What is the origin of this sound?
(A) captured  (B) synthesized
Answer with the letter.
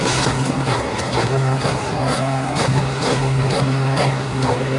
B